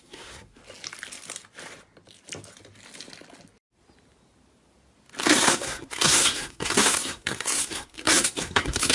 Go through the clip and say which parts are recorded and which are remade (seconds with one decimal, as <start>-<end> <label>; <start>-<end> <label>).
0.0-0.6 remade; 0.6-5.2 recorded; 5.2-8.9 remade